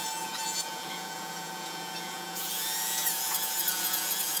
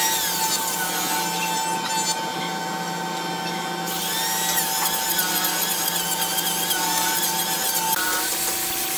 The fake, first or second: first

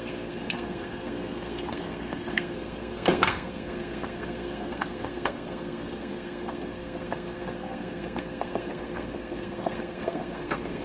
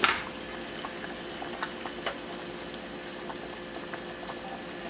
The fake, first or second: first